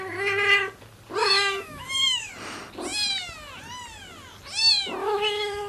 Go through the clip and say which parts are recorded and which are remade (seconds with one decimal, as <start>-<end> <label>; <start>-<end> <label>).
0.0-1.2 recorded; 1.2-2.3 remade; 2.3-5.0 recorded; 5.0-5.7 remade